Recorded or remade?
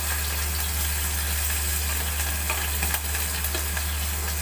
recorded